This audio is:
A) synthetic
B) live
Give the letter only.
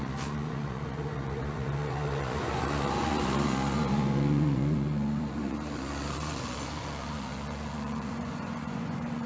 A